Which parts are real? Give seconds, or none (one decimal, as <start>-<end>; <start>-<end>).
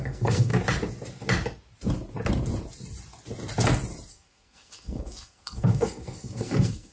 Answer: 0.5-4.1